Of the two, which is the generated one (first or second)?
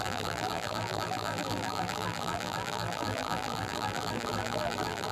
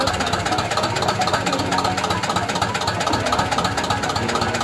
first